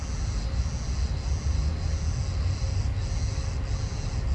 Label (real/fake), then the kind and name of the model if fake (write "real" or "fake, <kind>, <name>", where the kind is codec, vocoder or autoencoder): real